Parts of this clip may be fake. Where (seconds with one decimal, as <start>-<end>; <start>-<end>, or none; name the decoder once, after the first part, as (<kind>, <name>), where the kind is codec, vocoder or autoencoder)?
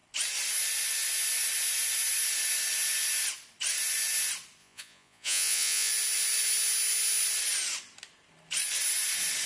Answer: 4.6-5.9 (vocoder, Vocos)